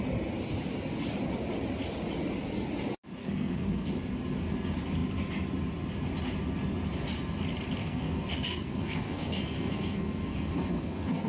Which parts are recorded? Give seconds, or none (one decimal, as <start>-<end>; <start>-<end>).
0.0-3.2; 3.9-7.8